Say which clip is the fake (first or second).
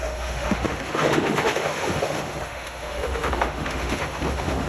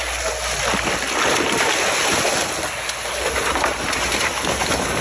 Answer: first